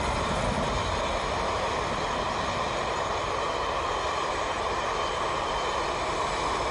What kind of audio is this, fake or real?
real